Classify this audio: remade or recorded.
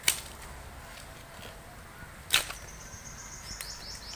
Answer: recorded